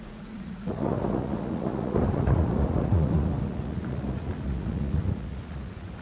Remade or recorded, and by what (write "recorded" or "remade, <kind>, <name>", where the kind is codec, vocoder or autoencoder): remade, vocoder, Vocos